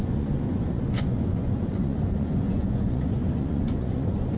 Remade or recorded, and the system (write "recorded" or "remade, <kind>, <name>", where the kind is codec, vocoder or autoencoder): remade, vocoder, Vocos